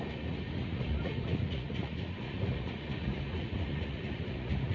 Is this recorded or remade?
remade